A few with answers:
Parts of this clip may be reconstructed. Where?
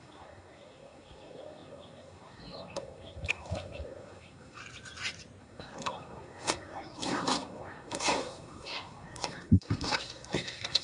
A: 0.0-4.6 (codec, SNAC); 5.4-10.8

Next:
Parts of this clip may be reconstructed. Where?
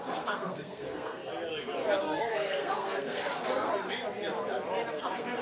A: 0.0-1.2 (codec, SNAC); 2.0-3.7; 4.9-5.4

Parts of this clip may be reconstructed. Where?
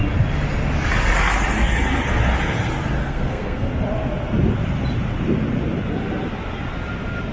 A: 3.0-3.7 (codec, SNAC)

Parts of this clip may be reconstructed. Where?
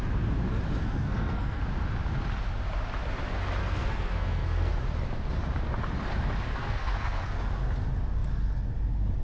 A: 0.8-1.6 (codec, SNAC); 3.6-4.7; 6.5-7.5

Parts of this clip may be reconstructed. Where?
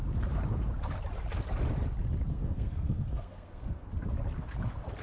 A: 2.3-3.9 (codec, SNAC)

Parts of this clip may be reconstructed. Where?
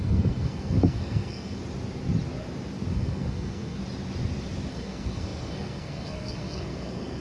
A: 0.0-1.6 (codec, SNAC); 2.9-3.8; 4.7-7.2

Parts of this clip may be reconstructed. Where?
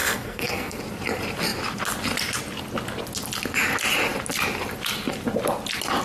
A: 0.0-0.8 (codec, SNAC)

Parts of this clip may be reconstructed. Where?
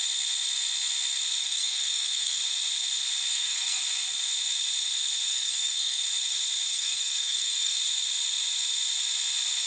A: 1.4-2.4 (codec, SNAC); 3.3-3.8; 5.3-6.0; 6.7-7.8